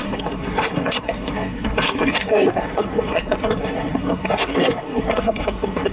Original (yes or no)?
no